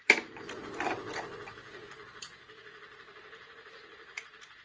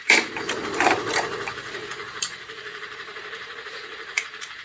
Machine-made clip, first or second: second